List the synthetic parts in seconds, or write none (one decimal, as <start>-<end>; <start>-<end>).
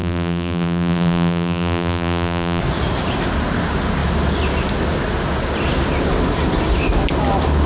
0.0-2.6